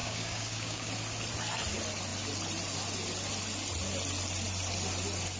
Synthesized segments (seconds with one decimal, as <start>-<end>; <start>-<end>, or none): 0.0-0.9